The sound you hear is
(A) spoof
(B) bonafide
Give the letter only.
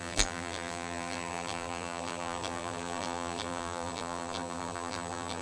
A